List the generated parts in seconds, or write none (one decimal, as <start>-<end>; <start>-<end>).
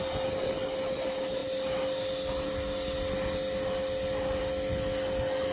none